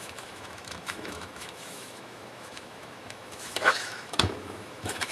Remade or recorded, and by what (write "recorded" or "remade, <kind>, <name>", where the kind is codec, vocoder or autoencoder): remade, autoencoder, DAC-VAE